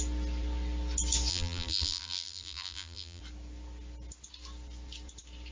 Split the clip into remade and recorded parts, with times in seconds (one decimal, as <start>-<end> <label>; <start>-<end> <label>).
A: 0.0-1.3 recorded; 1.3-3.2 remade; 3.2-5.5 recorded